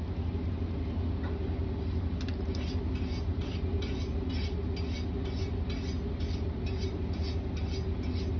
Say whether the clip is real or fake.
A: real